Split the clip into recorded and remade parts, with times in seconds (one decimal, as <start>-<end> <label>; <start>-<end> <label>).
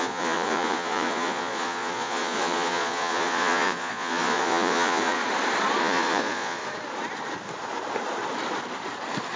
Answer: 0.0-5.2 remade; 5.2-5.8 recorded; 5.8-6.6 remade; 6.6-9.4 recorded